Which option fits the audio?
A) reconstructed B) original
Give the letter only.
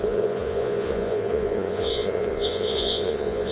A